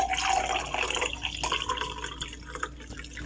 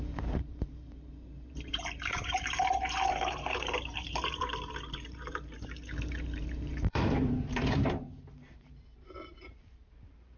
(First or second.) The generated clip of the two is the second